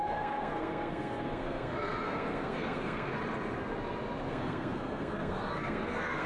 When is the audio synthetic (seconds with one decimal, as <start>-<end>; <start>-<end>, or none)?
0.0-3.1; 4.3-6.3